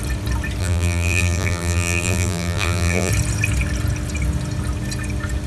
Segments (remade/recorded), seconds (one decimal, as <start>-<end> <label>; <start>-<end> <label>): 0.0-0.6 recorded; 0.6-3.1 remade; 3.1-5.5 recorded